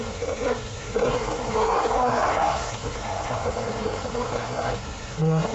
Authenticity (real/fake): fake